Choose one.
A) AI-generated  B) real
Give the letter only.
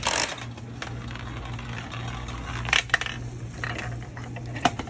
B